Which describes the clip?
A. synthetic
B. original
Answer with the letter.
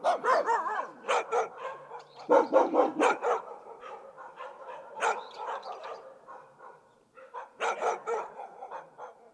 A